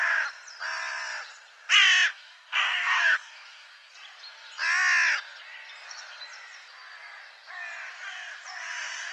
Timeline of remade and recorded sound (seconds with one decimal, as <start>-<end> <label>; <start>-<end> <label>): 0.0-2.1 recorded; 2.1-3.9 remade; 3.9-9.1 recorded